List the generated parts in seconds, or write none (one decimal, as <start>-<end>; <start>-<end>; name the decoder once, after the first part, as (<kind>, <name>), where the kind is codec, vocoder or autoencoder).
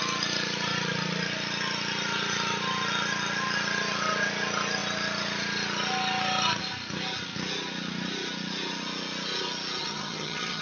9.8-10.6 (vocoder, HiFi-GAN)